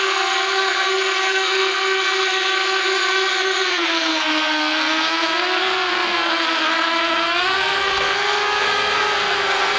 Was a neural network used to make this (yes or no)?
yes